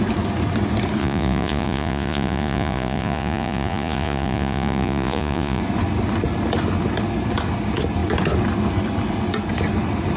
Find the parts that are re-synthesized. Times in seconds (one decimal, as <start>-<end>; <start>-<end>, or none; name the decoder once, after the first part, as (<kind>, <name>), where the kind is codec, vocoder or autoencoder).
1.0-5.6 (vocoder, Vocos)